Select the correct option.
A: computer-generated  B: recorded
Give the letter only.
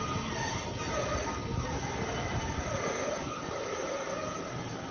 B